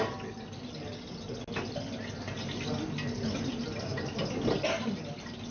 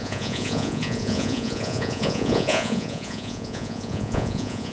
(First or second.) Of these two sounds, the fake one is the second